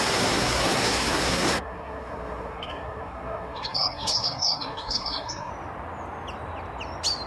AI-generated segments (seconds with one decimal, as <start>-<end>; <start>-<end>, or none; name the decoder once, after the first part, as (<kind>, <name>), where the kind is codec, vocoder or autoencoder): 0.0-5.5 (codec, SNAC)